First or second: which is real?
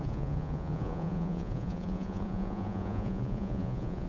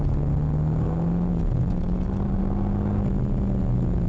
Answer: second